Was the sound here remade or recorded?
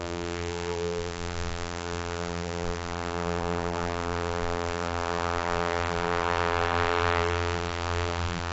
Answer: remade